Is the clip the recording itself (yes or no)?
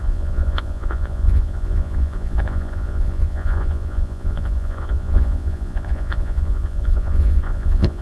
no